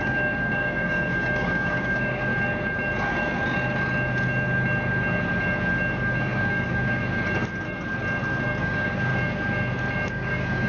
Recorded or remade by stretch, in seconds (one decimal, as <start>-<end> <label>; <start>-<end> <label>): 0.0-2.3 remade; 2.3-6.2 recorded; 6.2-7.0 remade; 7.0-8.6 recorded; 8.6-9.1 remade; 9.1-10.1 recorded; 10.1-10.7 remade